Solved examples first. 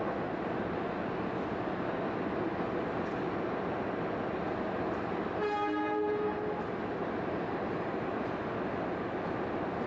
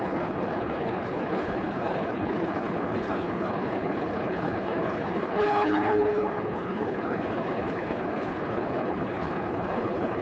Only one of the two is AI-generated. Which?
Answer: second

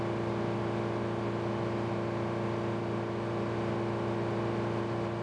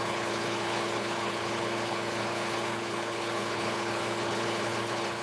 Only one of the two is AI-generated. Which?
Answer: second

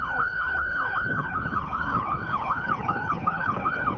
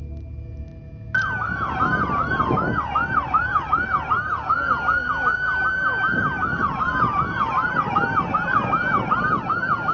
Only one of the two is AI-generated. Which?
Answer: first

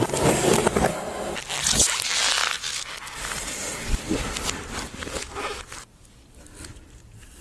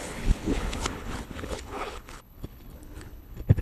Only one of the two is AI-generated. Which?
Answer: second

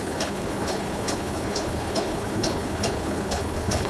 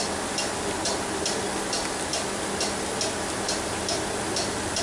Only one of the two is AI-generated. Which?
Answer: first